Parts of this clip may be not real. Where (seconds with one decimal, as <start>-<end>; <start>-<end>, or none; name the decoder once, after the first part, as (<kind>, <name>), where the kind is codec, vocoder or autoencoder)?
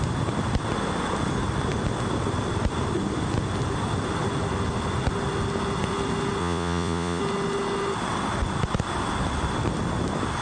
6.4-7.2 (vocoder, Vocos)